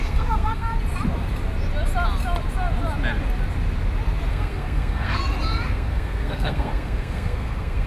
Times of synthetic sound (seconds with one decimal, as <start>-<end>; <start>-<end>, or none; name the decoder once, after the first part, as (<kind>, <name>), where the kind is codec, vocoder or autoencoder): 0.0-0.7 (codec, SNAC); 4.3-5.2; 5.7-7.9

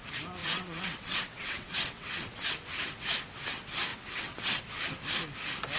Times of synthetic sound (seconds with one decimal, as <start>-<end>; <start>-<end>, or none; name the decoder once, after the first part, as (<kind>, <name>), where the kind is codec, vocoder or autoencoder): 0.4-2.5 (vocoder, WaveNeXt); 3.9-4.6

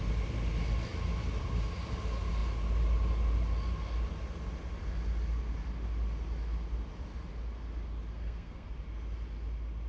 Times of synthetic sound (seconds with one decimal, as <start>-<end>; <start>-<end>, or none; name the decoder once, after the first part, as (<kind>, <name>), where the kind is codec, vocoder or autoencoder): 8.1-8.7 (codec, SNAC)

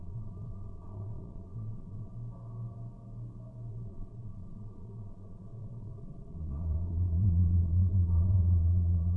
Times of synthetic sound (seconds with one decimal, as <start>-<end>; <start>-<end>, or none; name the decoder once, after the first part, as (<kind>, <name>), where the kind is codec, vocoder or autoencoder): 0.0-2.1 (vocoder, Vocos); 3.7-9.2

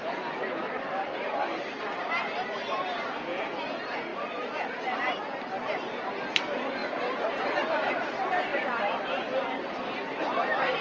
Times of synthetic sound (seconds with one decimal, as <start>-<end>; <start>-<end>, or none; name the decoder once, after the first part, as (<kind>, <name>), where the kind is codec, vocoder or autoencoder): 0.0-10.8 (vocoder, BigVGAN v2)